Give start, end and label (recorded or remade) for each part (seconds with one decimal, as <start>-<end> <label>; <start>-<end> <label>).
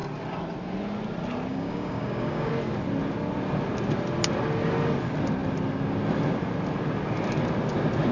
0.0-1.5 recorded; 1.5-2.5 remade; 2.5-8.1 recorded